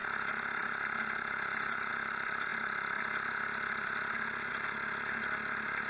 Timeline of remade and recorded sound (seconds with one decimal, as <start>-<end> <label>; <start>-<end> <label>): 0.0-5.9 recorded